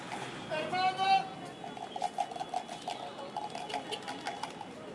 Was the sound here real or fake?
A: real